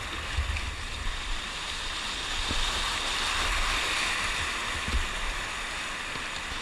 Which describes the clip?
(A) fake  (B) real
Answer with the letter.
B